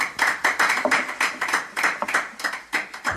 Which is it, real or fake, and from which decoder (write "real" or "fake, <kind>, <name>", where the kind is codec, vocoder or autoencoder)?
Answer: fake, vocoder, BigVGAN v2